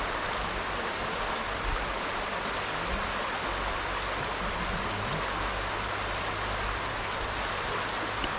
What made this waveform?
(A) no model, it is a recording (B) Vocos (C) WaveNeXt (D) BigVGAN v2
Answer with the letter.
A